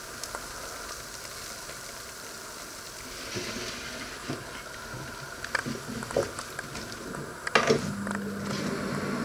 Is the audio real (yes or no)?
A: yes